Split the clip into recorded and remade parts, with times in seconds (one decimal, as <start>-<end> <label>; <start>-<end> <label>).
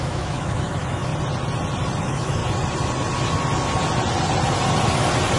0.0-1.1 remade; 1.1-2.0 recorded; 2.0-2.4 remade; 2.4-5.4 recorded